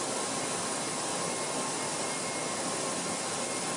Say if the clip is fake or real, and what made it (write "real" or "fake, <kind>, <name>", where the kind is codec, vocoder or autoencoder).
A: real